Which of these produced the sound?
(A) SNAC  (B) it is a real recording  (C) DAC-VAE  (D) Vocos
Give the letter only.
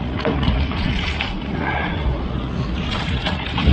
D